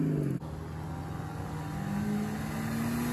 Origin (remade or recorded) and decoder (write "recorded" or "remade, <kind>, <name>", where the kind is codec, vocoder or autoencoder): recorded